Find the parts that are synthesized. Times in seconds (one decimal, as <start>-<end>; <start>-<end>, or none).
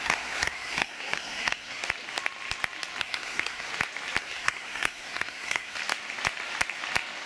0.0-1.8; 3.0-3.7; 4.2-5.8